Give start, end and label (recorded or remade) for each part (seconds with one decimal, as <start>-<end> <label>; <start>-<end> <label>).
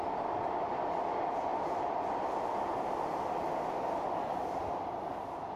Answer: 0.0-5.6 recorded